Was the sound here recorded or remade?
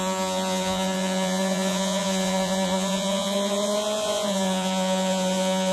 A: remade